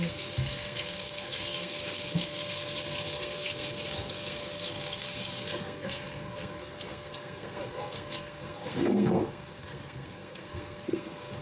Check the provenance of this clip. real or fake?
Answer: fake